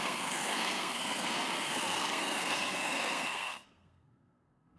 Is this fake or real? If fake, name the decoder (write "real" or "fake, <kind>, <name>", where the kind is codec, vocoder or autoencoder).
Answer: fake, codec, SNAC